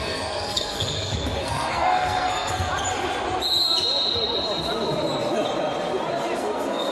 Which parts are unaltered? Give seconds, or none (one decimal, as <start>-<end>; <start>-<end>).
2.7-6.4